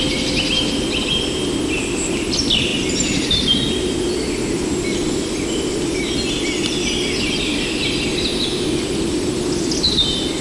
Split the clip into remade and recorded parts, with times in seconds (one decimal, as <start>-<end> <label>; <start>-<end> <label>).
0.0-10.4 recorded